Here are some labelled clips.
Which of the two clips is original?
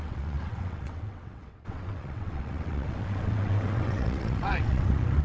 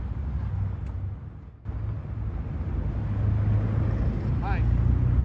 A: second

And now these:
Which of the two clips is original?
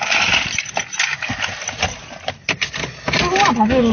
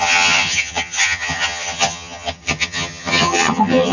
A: first